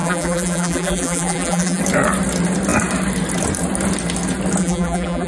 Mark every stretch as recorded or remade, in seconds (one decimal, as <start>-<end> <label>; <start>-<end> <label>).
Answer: 0.0-1.8 remade; 1.8-4.6 recorded; 4.6-5.3 remade